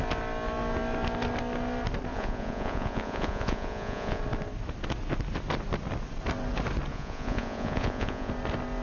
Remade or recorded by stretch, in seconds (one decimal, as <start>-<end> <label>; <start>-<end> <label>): 0.0-2.1 recorded; 2.1-4.2 remade; 4.2-6.9 recorded; 6.9-8.3 remade; 8.3-8.8 recorded